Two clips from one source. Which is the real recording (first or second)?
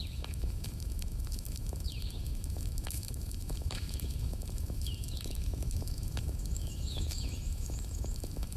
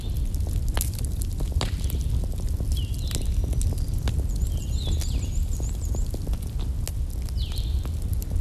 second